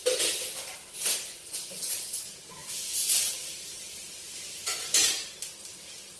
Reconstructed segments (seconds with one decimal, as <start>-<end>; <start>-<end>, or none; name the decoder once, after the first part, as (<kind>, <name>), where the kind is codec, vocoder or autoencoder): 1.3-2.1 (vocoder, Vocos)